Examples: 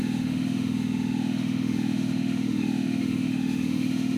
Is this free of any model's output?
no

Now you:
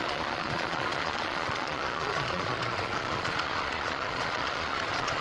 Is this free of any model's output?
no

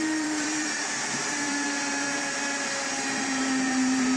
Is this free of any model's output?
no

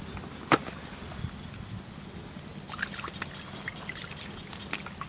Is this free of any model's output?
yes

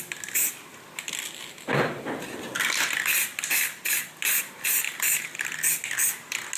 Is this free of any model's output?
yes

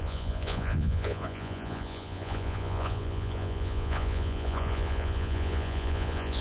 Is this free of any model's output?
no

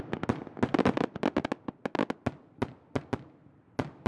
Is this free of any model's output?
yes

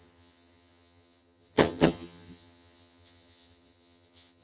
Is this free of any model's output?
no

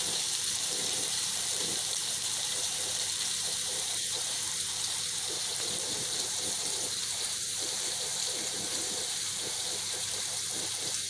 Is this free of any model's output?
no